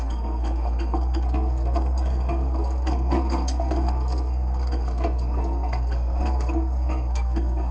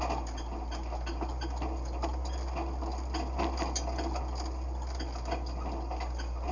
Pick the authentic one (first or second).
second